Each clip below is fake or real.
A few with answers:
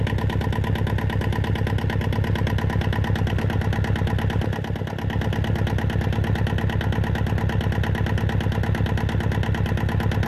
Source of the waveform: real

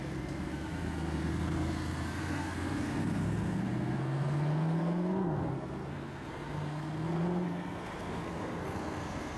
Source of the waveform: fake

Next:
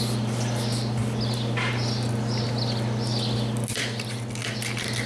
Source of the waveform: real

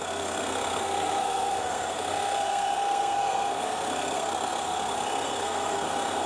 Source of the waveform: fake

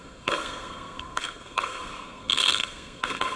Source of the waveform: fake